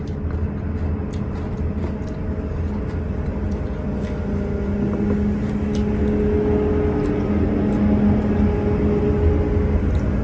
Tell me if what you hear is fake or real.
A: real